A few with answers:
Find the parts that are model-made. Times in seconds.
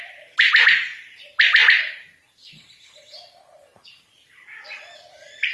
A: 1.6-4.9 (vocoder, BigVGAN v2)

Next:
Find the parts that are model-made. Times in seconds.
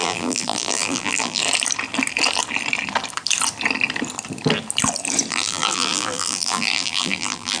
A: 0.0-1.4 (vocoder, BigVGAN v2); 5.3-7.6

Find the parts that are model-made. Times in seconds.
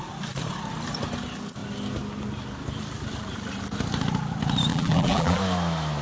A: 4.7-5.4 (vocoder, BigVGAN v2)